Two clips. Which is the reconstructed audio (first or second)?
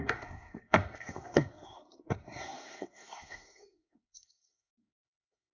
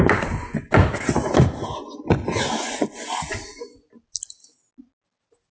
first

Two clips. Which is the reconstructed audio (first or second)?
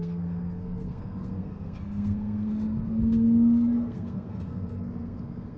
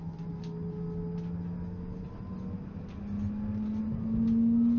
first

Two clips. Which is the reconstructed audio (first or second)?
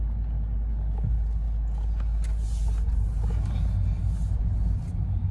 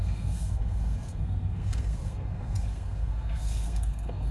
second